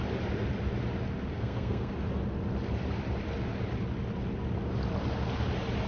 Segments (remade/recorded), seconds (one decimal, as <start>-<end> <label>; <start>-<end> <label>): 0.0-1.3 recorded; 1.3-1.9 remade; 1.9-5.9 recorded